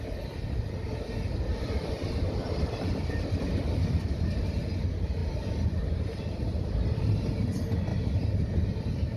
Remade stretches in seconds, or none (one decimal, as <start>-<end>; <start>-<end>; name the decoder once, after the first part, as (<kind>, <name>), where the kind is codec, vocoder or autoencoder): 1.5-4.6 (vocoder, BigVGAN v2)